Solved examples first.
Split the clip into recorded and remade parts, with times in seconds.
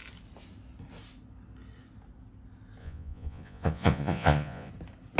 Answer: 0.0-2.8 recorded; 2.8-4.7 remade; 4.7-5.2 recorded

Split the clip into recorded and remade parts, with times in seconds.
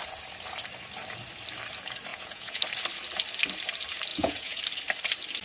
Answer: 0.0-2.1 recorded; 2.1-2.6 remade; 2.6-4.1 recorded; 4.1-4.6 remade; 4.6-5.4 recorded